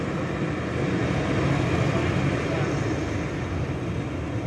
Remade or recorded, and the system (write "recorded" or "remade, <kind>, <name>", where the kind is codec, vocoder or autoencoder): recorded